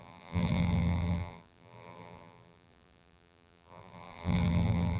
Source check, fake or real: fake